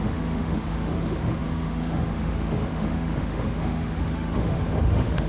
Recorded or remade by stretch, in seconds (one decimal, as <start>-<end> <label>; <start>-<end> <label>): 0.0-5.3 remade